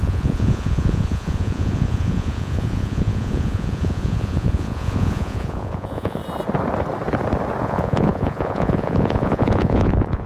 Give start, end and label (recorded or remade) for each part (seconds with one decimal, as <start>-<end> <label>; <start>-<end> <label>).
0.0-6.2 remade; 6.2-7.6 recorded; 7.6-10.3 remade